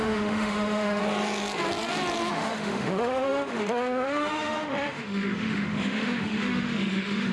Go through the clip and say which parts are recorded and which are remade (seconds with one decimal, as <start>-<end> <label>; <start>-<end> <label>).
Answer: 0.0-1.0 remade; 1.0-2.3 recorded; 2.3-7.3 remade